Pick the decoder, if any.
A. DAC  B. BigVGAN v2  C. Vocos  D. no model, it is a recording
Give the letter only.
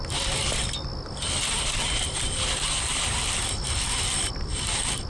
D